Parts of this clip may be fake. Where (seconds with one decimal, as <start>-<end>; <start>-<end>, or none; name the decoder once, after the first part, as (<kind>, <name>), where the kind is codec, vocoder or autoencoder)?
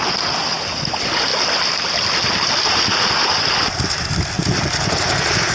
none